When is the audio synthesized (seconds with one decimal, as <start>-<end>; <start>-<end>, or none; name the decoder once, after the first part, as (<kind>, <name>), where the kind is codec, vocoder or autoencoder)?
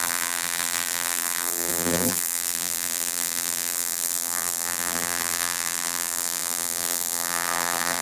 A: 0.0-8.0 (vocoder, BigVGAN v2)